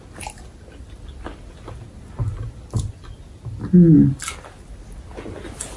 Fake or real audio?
real